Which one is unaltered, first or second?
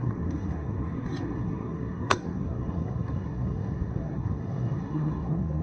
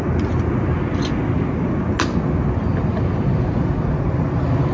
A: second